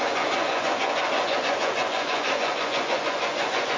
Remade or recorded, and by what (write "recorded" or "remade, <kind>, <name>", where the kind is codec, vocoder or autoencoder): remade, vocoder, Vocos